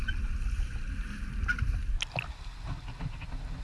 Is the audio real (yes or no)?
yes